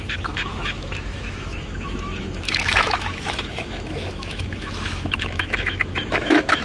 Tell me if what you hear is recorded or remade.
remade